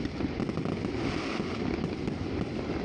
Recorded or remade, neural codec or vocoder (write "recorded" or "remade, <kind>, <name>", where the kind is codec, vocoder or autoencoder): recorded